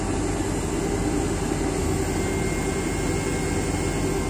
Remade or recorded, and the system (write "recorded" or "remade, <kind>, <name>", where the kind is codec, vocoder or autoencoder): recorded